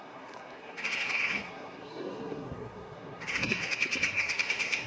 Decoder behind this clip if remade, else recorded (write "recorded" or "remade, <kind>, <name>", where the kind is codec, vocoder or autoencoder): remade, codec, SNAC